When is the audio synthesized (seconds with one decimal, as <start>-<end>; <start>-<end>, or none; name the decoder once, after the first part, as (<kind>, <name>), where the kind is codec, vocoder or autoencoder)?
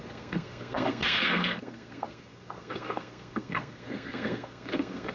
0.0-5.1 (codec, SNAC)